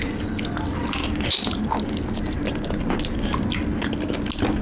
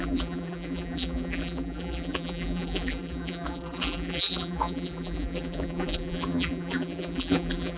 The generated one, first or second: second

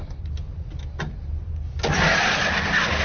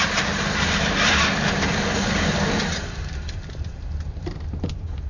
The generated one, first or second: second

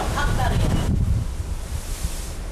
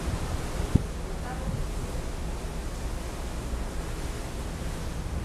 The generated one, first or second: first